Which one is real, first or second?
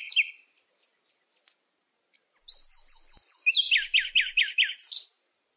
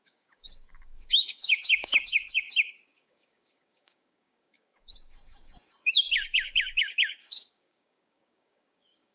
first